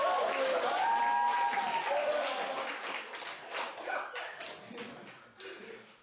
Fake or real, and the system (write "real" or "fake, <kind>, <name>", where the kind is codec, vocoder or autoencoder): real